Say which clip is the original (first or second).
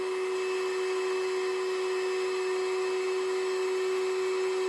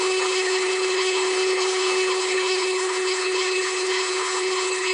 first